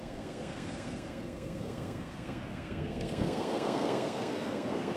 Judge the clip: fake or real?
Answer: fake